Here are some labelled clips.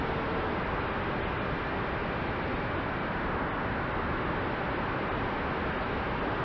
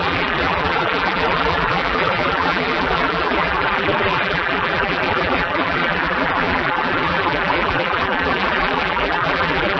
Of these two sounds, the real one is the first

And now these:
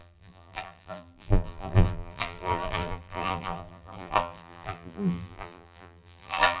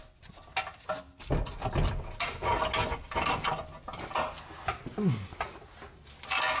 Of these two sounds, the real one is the second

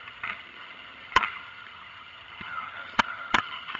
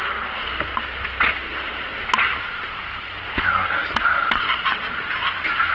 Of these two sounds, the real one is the second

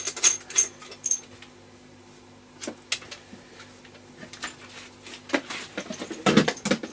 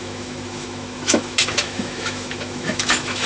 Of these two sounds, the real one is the first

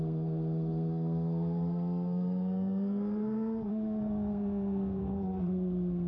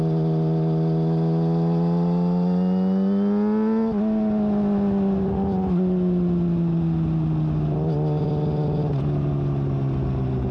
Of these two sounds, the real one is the second